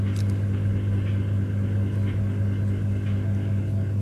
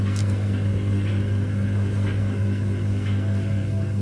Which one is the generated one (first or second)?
second